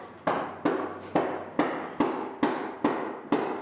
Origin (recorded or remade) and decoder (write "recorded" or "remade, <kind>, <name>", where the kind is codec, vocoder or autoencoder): recorded